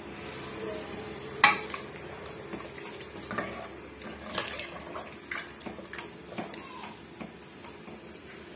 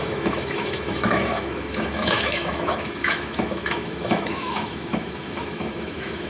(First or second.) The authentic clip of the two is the first